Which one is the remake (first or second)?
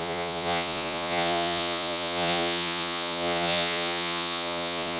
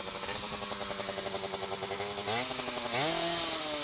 first